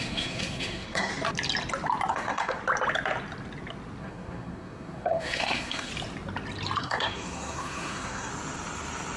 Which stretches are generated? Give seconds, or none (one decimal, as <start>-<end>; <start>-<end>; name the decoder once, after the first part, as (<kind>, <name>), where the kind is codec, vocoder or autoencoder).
0.0-1.1 (codec, SNAC); 2.1-2.6; 4.0-5.9; 6.8-8.3